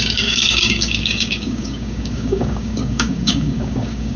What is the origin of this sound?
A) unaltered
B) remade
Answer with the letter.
B